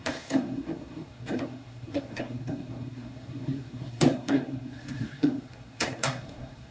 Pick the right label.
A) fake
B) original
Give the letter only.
A